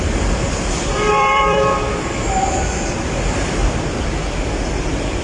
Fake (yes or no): yes